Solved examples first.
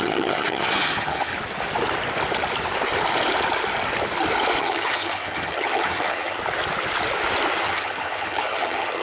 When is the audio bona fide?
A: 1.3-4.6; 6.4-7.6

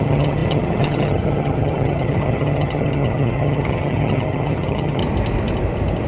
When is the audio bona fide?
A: 5.0-6.1